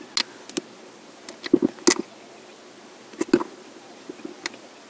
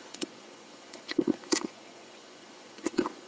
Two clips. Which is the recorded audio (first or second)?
first